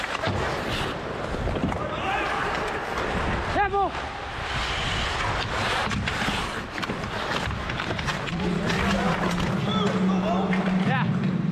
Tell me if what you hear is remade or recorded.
recorded